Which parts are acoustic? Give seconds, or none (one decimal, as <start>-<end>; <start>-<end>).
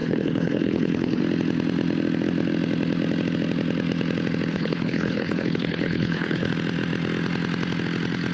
1.2-4.5; 6.5-8.3